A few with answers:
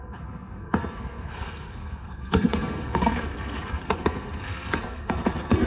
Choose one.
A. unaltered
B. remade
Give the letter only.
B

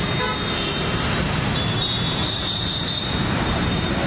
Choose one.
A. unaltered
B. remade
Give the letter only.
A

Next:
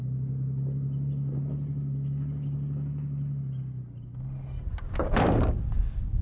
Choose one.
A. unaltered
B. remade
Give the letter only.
A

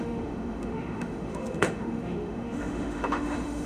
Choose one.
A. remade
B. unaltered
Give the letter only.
A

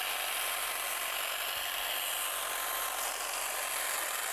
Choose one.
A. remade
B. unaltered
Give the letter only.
B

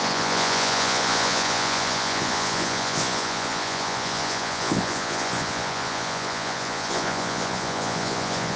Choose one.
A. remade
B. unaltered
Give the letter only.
A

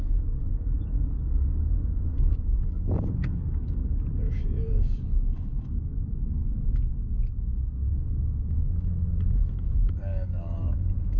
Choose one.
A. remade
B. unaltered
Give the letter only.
A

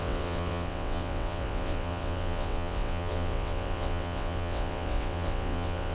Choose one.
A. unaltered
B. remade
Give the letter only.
B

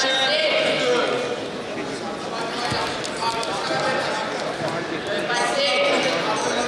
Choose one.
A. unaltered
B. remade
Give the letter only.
A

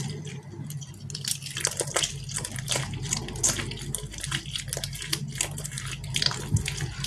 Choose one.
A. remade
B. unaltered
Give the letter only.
B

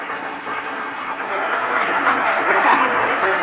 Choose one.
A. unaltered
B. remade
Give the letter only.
B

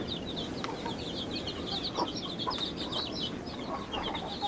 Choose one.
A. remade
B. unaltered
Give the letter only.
B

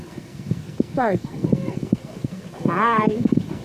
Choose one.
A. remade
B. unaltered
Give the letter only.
A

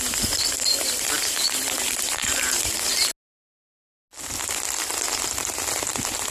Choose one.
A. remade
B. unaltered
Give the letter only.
B